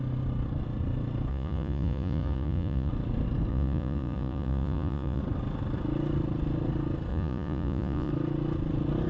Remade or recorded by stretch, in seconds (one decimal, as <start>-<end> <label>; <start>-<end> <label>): 0.0-1.3 recorded; 1.3-2.9 remade; 2.9-3.5 recorded; 3.5-5.2 remade; 5.2-7.1 recorded; 7.1-8.1 remade; 8.1-9.1 recorded